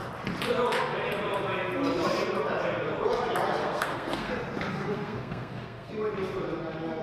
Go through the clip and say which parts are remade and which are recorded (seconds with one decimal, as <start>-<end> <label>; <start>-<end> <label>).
0.0-3.6 recorded; 3.6-4.3 remade; 4.3-4.7 recorded; 4.7-5.9 remade; 5.9-7.0 recorded